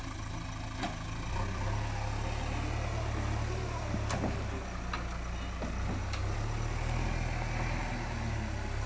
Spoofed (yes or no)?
no